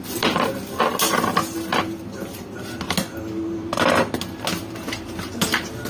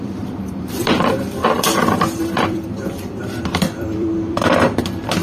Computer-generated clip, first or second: second